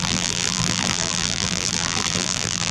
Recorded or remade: remade